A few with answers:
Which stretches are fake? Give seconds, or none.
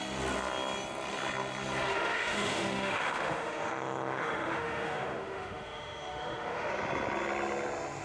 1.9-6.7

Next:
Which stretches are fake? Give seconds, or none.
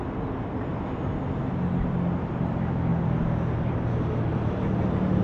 none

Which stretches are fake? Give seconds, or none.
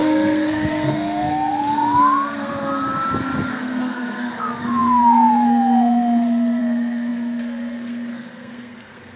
0.0-2.5; 3.5-9.2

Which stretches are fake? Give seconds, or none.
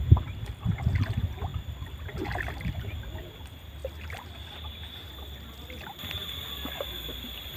1.5-2.0; 3.8-4.8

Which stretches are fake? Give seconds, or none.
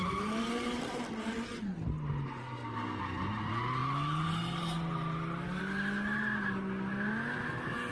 2.4-3.0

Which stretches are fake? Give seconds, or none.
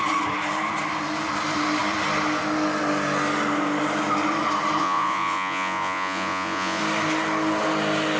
4.8-6.8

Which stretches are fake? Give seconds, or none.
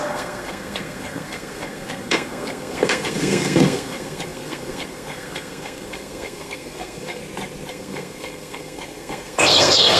0.0-7.2; 7.7-10.0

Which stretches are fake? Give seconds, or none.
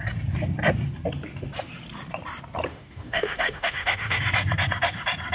2.7-4.2